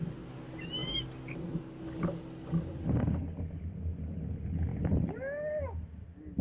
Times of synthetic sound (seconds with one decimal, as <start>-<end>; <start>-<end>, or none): none